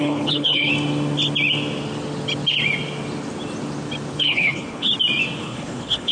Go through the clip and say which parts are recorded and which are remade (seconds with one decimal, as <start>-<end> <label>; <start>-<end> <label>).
0.0-0.7 remade; 0.7-4.1 recorded; 4.1-4.9 remade; 4.9-5.4 recorded; 5.4-6.1 remade